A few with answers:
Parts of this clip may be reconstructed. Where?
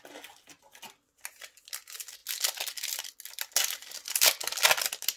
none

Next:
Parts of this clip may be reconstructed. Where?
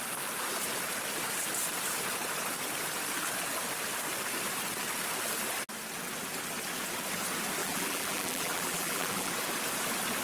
7.6-9.3 (vocoder, BigVGAN v2)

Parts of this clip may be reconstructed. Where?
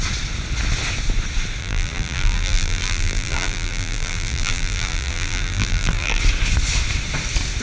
1.6-6.2 (vocoder, BigVGAN v2)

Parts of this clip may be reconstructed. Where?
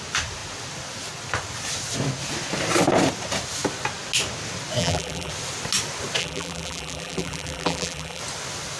4.8-5.3 (vocoder, BigVGAN v2); 6.2-8.2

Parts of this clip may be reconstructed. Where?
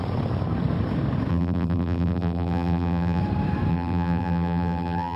1.3-3.2 (vocoder, BigVGAN v2); 3.7-5.2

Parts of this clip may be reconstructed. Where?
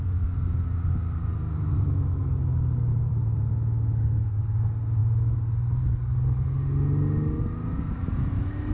2.9-3.5 (vocoder, BigVGAN v2)